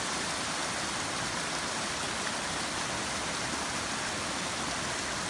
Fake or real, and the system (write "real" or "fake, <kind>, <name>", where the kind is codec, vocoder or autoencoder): real